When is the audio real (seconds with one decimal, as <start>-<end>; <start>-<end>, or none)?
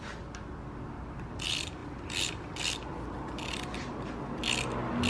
0.0-5.1